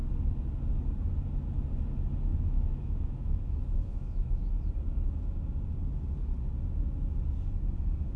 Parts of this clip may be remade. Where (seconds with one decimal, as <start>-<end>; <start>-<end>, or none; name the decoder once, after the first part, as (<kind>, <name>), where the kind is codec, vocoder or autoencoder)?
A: 2.3-4.5 (autoencoder, DAC-VAE)